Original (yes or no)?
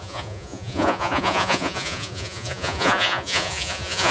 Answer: no